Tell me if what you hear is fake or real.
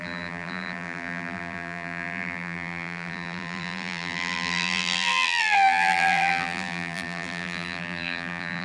fake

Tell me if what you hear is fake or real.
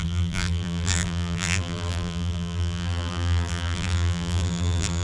fake